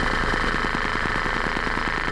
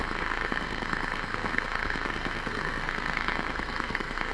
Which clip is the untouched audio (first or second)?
first